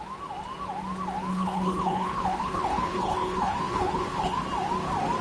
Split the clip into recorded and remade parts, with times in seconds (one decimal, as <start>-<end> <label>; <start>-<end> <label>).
0.0-1.3 recorded; 1.3-4.4 remade; 4.4-5.2 recorded